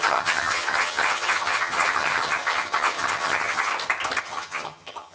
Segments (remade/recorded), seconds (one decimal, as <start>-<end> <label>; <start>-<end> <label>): 0.0-3.7 remade; 3.7-4.2 recorded; 4.2-5.1 remade